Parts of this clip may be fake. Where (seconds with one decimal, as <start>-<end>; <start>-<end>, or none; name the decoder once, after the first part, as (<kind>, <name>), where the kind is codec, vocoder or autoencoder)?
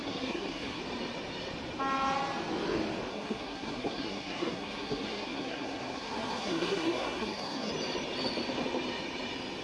0.0-0.8 (codec, SNAC); 3.1-7.7